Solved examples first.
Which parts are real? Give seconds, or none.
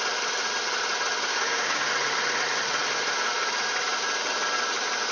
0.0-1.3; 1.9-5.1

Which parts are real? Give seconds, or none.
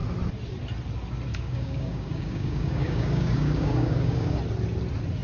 0.0-1.3; 4.4-5.2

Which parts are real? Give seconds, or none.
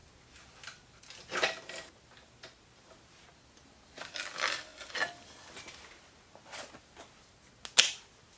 0.0-8.4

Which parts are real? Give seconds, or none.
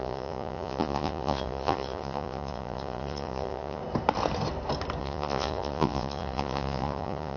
3.8-5.0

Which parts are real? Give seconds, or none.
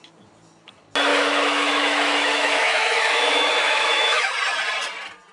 0.0-1.1; 4.3-5.3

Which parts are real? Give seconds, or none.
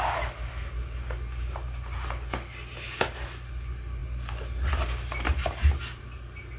0.0-6.6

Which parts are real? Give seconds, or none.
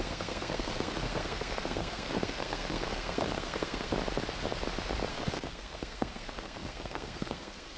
3.9-5.1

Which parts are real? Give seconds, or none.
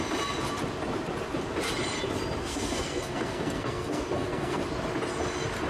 0.0-2.4; 4.6-5.7